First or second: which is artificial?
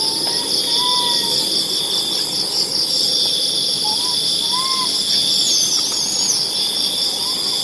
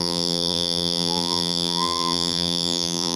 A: second